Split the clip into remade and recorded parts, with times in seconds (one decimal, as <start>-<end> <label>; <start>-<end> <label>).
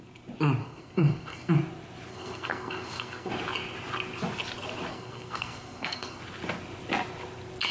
0.0-0.6 recorded; 0.6-1.5 remade; 1.5-2.1 recorded; 2.1-3.3 remade; 3.3-4.9 recorded; 4.9-6.2 remade; 6.2-7.7 recorded